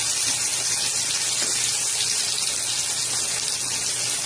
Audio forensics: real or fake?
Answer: real